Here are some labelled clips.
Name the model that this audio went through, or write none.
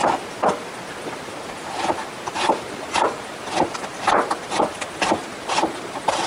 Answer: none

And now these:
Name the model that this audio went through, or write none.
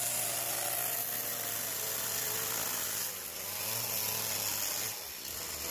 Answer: none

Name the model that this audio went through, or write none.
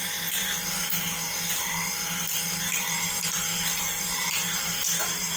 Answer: none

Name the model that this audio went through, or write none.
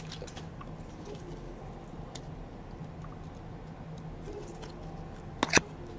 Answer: none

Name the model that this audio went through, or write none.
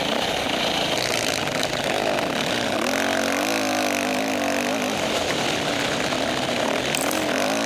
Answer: none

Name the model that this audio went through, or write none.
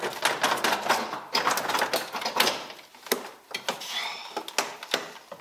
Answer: none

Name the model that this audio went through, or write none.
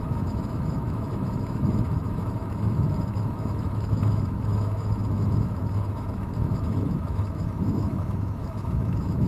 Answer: autoencoder, DAC-VAE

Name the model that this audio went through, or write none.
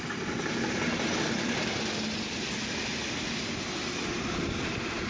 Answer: none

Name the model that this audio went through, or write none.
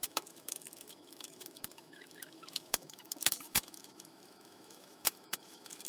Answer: autoencoder, DAC-VAE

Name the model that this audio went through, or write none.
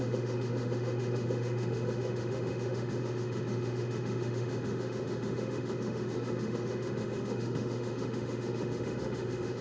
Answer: autoencoder, DAC-VAE